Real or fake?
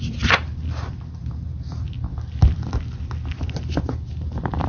real